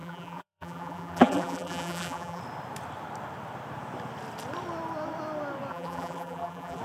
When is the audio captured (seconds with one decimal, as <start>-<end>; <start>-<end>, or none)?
2.4-5.7